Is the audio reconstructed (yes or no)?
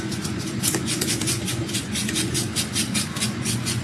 yes